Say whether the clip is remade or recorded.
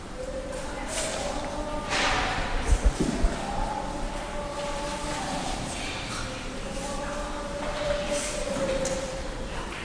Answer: recorded